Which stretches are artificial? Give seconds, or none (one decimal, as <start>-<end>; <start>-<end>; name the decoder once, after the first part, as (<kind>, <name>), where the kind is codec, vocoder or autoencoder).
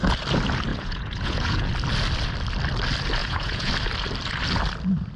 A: 0.7-1.7 (vocoder, Vocos); 3.2-3.7